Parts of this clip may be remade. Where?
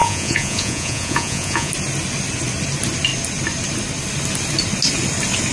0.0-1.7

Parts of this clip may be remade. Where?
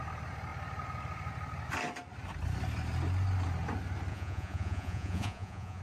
4.1-5.8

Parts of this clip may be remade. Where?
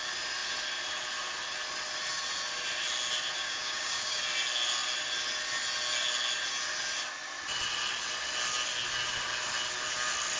3.4-4.2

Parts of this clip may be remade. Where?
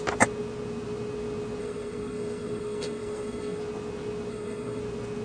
1.6-3.6; 4.3-4.8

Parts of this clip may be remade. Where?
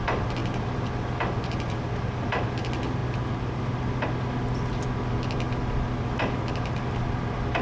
none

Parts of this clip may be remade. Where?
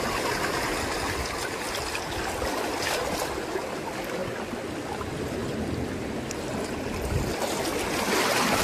none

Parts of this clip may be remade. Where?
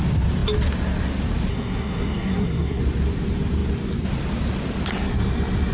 1.5-2.8